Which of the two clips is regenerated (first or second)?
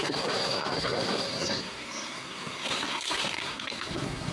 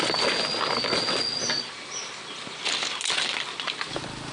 first